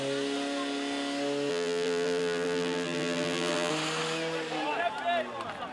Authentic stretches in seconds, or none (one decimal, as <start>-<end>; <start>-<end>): 0.0-1.5; 3.7-5.7